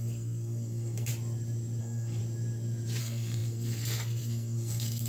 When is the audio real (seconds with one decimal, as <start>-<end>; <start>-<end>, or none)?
1.1-1.8; 2.2-3.0